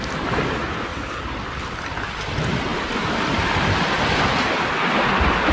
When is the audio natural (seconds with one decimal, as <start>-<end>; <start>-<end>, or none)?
0.0-5.5